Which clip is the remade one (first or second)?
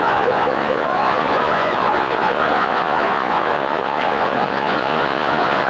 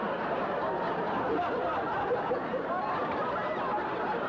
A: first